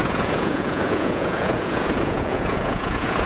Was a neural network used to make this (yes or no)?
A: yes